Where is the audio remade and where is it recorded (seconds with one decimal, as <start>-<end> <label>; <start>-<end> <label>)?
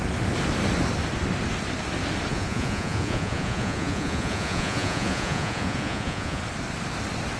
0.0-2.3 recorded; 2.3-6.4 remade; 6.4-7.4 recorded